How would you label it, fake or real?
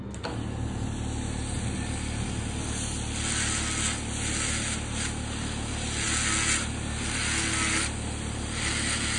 real